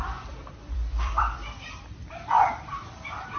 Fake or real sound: fake